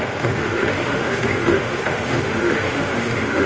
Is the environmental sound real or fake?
fake